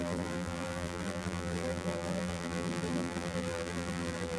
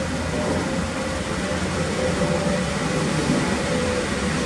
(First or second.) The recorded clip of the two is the second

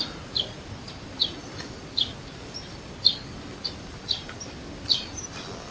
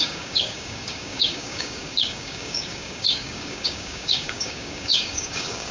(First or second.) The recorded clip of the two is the first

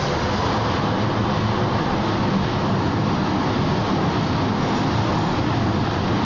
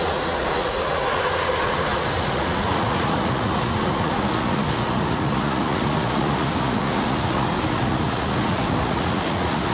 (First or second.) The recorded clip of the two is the first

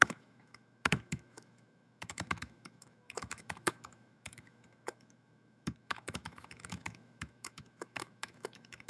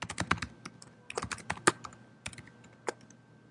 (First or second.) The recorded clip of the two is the second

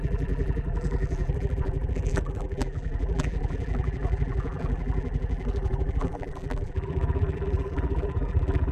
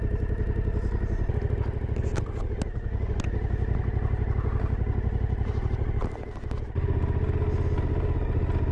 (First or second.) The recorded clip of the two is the second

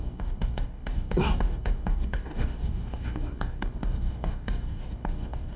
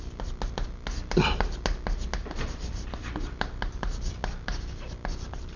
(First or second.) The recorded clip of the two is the second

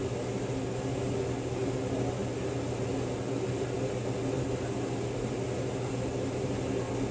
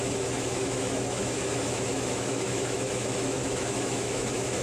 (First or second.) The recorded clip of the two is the first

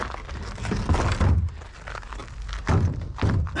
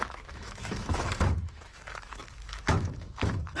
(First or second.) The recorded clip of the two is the first